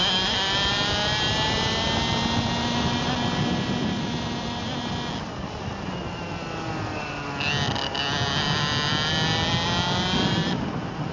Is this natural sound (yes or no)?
yes